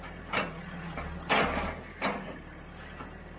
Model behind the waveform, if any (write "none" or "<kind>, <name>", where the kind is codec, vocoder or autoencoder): none